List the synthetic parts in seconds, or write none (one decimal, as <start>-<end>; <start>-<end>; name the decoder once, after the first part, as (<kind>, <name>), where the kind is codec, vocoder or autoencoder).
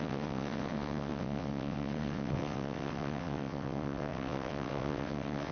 0.0-5.5 (vocoder, WaveNeXt)